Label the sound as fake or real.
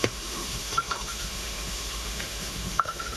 fake